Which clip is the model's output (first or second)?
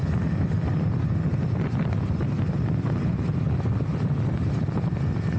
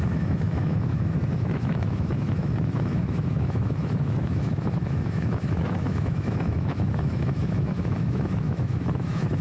second